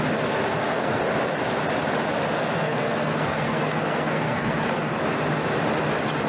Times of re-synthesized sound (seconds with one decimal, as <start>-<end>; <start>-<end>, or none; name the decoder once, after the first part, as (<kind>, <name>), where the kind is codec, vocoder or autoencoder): 0.5-1.0 (codec, SNAC); 2.4-4.8